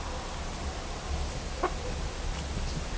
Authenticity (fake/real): real